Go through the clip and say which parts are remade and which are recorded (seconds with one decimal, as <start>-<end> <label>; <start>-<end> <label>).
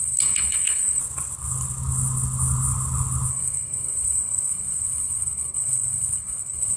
0.0-1.0 remade; 1.0-3.3 recorded; 3.3-6.8 remade